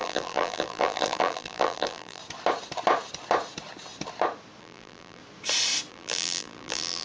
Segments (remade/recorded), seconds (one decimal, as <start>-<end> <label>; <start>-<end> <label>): 0.0-2.2 remade; 2.2-4.6 recorded; 4.6-5.2 remade; 5.2-5.9 recorded; 5.9-7.0 remade